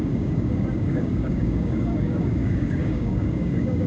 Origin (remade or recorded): remade